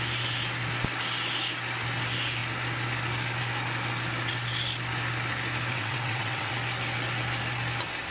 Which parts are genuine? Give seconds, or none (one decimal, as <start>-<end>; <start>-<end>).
0.0-5.7; 6.5-8.1